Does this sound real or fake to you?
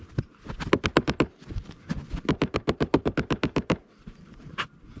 real